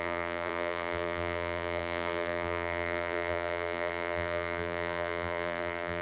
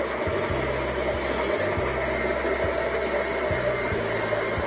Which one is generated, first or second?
first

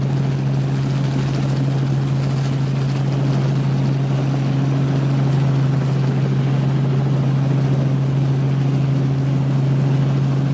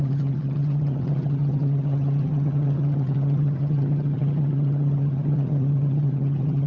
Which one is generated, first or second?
second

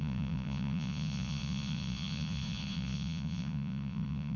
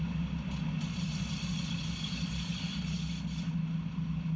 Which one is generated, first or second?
first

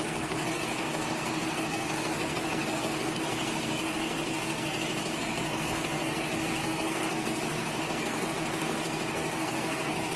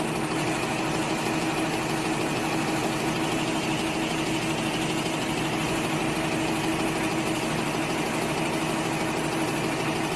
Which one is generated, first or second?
first